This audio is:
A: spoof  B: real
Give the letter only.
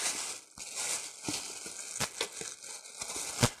B